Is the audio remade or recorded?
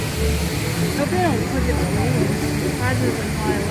recorded